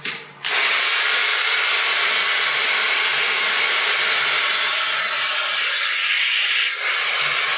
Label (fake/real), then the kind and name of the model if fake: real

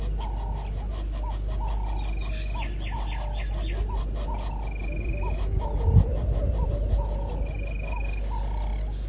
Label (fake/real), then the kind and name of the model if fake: real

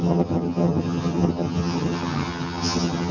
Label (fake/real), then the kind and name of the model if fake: fake, vocoder, HiFi-GAN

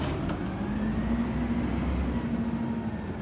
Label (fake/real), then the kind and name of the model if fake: real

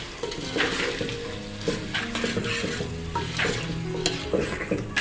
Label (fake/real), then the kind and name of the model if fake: real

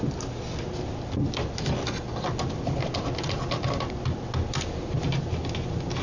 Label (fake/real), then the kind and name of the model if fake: real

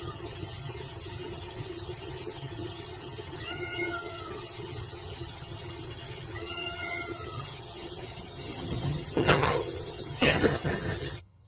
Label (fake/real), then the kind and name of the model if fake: fake, vocoder, HiFi-GAN